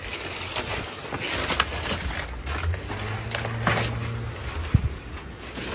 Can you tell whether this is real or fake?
real